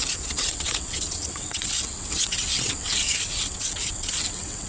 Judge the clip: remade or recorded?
remade